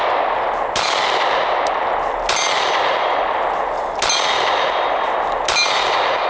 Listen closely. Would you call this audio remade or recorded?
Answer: recorded